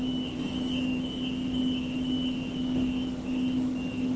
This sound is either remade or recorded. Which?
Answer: remade